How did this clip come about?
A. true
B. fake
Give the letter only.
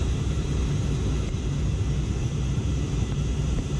B